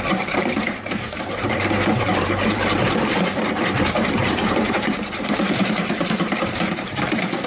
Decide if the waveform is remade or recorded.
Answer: remade